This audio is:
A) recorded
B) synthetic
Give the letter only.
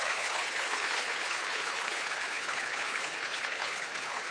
B